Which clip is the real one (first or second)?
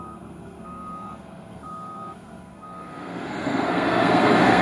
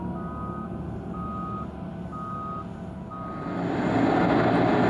second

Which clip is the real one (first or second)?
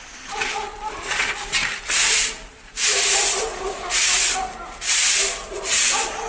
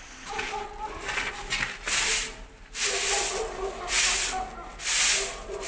second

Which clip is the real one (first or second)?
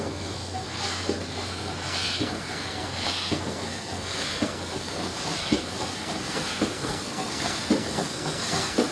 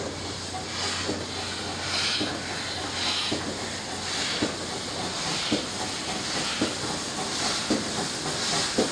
second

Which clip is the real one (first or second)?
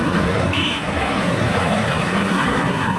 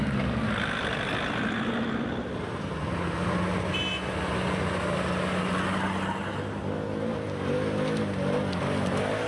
second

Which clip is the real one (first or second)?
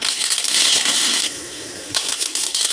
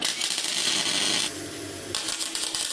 second